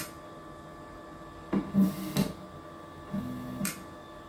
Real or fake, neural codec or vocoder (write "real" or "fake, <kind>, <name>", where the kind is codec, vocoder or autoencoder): real